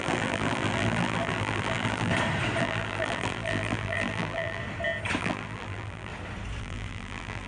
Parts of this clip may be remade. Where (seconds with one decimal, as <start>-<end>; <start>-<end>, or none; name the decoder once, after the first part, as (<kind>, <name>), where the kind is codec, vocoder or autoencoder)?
0.0-2.1 (vocoder, BigVGAN v2); 2.6-4.6; 5.2-6.1; 6.6-7.5